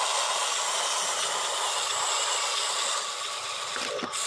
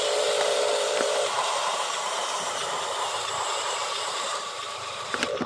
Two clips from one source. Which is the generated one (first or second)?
second